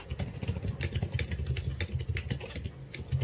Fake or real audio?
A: real